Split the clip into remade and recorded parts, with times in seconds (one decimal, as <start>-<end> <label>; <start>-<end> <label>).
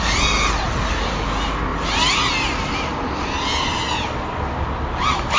0.0-5.4 recorded